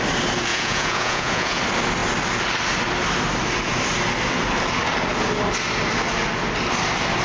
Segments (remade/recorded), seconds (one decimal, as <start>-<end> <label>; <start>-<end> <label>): 0.0-0.5 recorded; 0.5-1.6 remade; 1.6-7.2 recorded